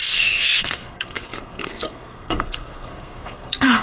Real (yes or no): no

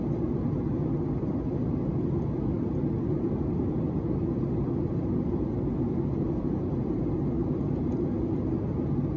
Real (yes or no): yes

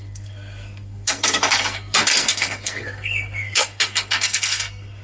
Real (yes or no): no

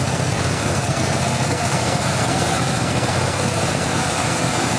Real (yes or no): no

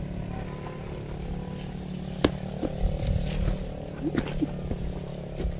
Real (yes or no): yes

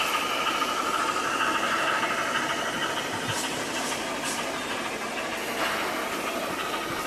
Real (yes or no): yes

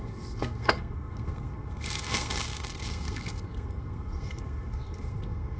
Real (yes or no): no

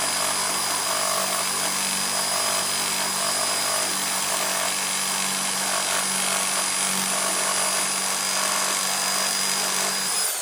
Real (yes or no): yes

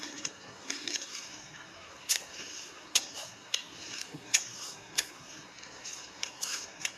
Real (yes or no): no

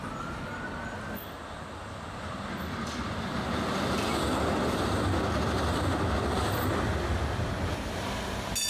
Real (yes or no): yes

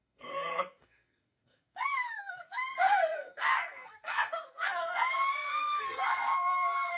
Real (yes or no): no